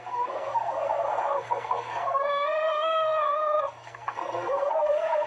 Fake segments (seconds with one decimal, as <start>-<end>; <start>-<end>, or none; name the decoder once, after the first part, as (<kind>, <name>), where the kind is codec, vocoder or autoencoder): 0.0-5.3 (codec, SNAC)